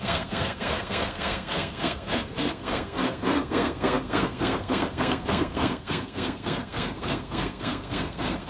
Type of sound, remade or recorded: remade